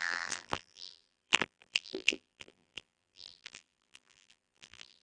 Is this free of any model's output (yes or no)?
no